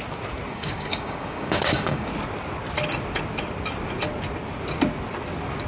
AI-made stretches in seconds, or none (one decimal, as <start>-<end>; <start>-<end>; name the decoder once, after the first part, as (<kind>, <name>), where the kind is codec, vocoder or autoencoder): 0.5-2.1 (codec, DAC)